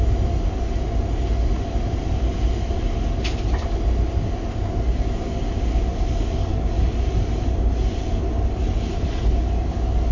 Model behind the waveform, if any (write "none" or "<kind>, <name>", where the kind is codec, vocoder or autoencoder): none